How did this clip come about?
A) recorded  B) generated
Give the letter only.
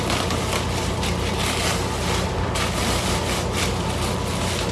A